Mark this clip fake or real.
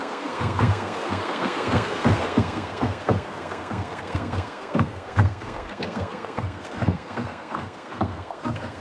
fake